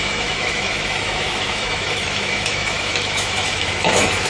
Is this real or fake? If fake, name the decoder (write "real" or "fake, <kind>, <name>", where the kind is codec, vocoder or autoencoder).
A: fake, autoencoder, DAC-VAE